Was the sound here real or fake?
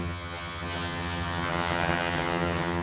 fake